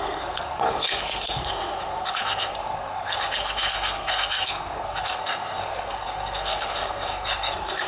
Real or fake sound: fake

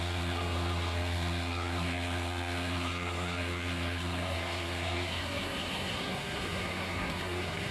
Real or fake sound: fake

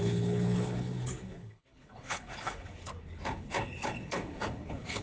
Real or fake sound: fake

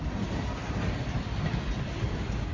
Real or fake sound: real